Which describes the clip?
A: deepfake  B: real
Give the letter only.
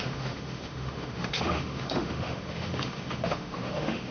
A